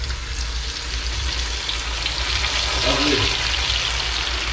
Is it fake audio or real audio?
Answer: real